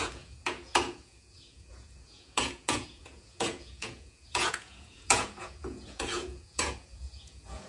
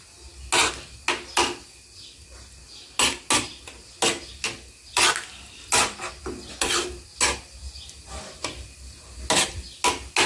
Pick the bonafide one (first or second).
second